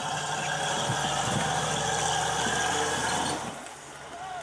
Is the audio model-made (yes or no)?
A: no